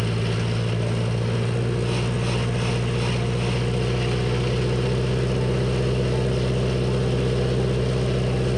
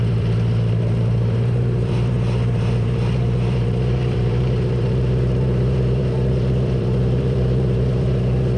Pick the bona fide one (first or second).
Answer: first